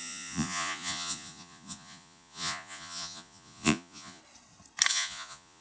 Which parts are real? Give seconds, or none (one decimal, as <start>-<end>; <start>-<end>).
4.2-4.9